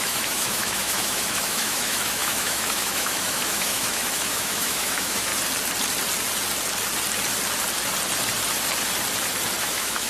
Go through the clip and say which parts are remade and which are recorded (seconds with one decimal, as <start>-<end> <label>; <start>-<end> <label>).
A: 0.0-5.3 remade; 5.3-9.6 recorded; 9.6-10.1 remade